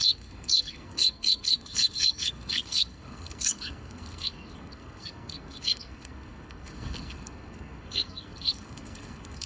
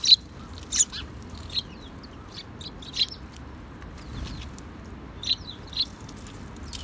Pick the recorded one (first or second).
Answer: second